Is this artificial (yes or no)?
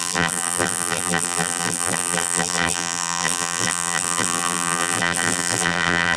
yes